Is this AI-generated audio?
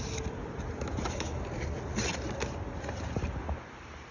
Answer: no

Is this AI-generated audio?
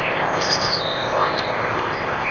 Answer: yes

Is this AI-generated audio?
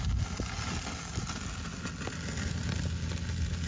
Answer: no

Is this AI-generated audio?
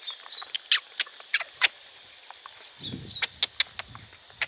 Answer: no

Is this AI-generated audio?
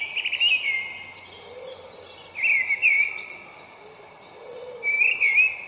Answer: no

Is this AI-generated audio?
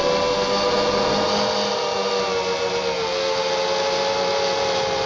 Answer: no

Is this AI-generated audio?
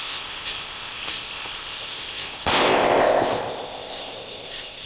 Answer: yes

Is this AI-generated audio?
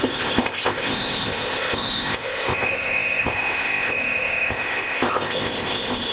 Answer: yes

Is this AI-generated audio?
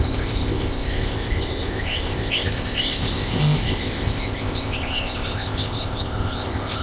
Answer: yes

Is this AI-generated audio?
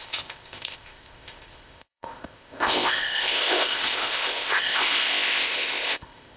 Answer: yes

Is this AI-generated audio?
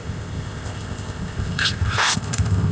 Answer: yes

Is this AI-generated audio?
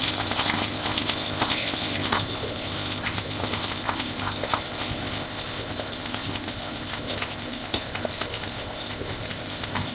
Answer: yes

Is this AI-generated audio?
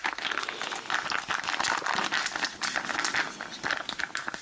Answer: no